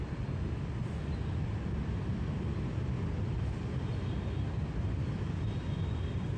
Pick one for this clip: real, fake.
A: real